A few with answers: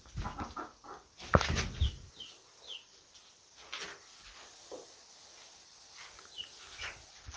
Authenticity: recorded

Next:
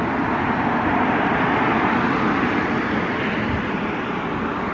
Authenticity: recorded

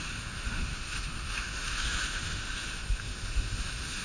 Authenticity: remade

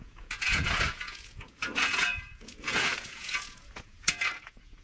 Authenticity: remade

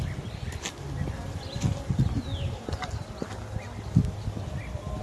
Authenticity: recorded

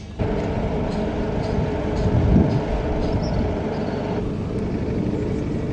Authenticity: recorded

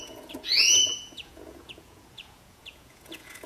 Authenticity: remade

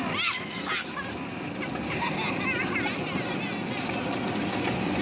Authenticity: recorded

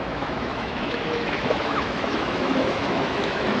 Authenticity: remade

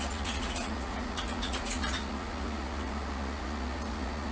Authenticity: remade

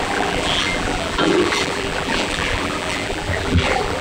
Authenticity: remade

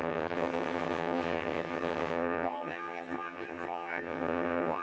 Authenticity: remade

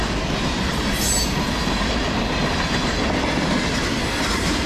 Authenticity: recorded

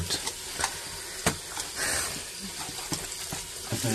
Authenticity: recorded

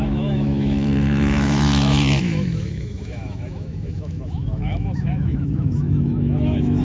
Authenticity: remade